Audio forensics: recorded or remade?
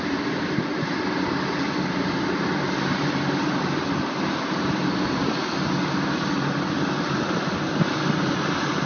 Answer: recorded